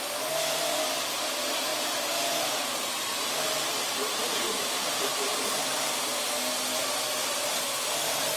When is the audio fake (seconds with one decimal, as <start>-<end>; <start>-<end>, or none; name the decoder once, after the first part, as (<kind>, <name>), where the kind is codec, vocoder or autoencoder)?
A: 1.7-5.3 (vocoder, BigVGAN v2)